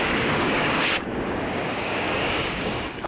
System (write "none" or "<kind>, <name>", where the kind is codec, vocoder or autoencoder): codec, DAC